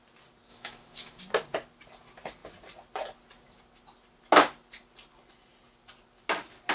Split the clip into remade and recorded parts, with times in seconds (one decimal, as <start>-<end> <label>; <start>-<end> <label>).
0.0-0.5 recorded; 0.5-1.2 remade; 1.2-6.7 recorded

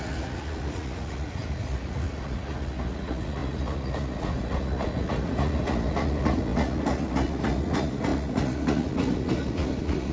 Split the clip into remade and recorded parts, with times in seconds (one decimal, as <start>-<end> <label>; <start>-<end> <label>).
0.0-10.1 remade

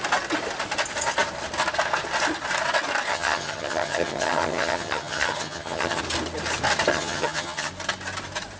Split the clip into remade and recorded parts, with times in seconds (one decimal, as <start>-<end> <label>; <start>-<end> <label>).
0.0-3.1 recorded; 3.1-6.0 remade; 6.0-6.9 recorded; 6.9-7.7 remade; 7.7-8.6 recorded

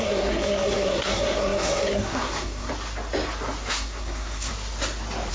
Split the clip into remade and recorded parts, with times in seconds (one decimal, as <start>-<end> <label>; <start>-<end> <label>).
0.0-2.7 remade; 2.7-3.7 recorded; 3.7-4.5 remade; 4.5-5.3 recorded

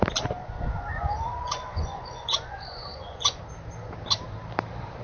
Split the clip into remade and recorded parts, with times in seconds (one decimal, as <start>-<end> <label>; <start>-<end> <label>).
0.0-0.4 recorded; 0.4-3.4 remade; 3.4-5.0 recorded